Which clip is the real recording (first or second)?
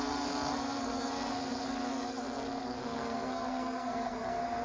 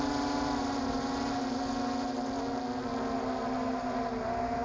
second